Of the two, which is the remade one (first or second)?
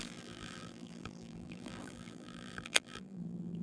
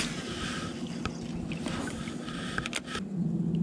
first